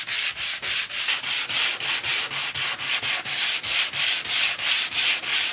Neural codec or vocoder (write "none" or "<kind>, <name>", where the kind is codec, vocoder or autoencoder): none